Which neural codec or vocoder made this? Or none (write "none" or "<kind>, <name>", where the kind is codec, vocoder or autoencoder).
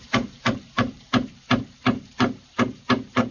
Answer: vocoder, BigVGAN v2